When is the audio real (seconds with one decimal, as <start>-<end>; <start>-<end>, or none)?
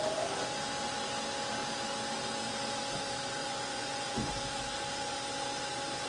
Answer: 0.0-3.4; 4.3-6.1